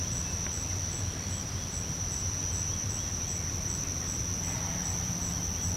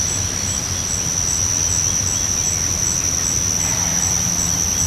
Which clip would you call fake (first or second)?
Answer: first